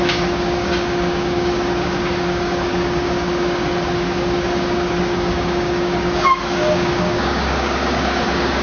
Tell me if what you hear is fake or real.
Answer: fake